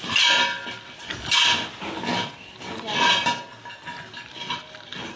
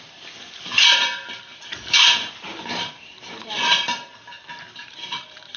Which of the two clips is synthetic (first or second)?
second